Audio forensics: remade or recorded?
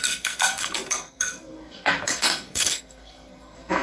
remade